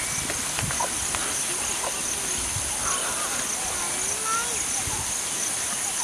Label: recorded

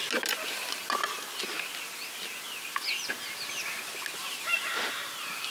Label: recorded